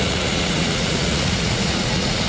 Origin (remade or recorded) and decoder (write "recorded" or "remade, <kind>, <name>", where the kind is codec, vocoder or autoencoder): remade, vocoder, Vocos